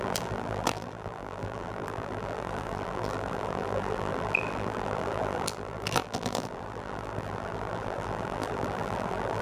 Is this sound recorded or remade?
remade